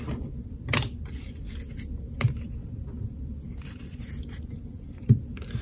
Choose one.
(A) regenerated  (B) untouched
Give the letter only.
B